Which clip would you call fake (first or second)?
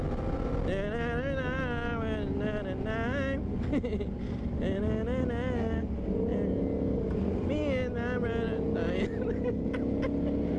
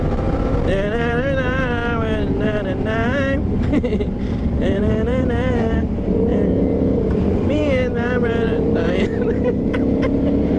second